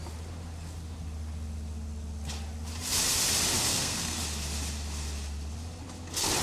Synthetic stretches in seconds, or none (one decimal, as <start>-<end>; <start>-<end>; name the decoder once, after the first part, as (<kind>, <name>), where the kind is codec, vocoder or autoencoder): 3.7-4.2 (codec, SNAC)